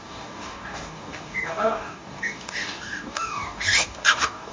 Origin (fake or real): fake